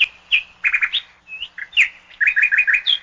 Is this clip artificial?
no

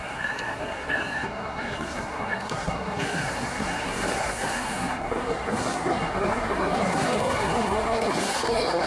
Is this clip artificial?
yes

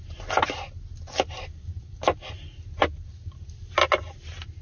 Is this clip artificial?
no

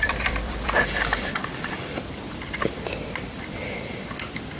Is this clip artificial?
yes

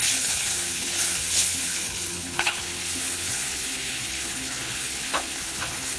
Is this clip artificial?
yes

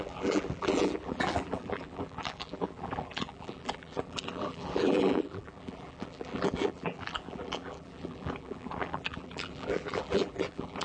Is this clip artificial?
yes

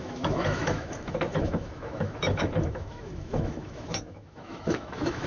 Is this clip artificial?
yes